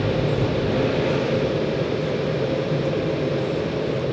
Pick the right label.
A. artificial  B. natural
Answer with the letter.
B